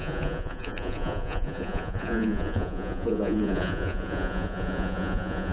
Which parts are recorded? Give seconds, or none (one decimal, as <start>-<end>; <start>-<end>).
none